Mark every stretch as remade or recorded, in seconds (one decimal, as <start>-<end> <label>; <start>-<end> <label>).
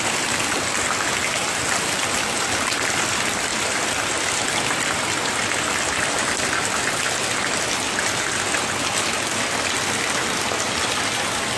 0.0-11.6 recorded